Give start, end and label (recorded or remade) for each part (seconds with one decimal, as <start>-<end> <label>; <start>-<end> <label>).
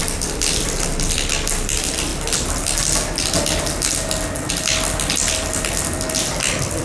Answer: 0.0-6.8 recorded